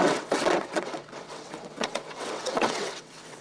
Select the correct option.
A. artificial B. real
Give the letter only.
A